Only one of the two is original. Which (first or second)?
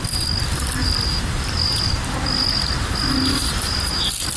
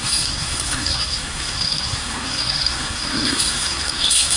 first